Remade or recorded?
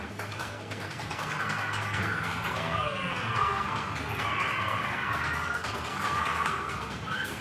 remade